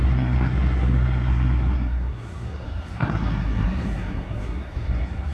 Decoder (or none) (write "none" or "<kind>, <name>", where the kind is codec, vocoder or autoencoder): codec, SNAC